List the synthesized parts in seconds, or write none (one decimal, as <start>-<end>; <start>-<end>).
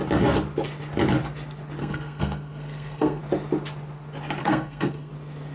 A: 1.8-3.2; 4.4-5.1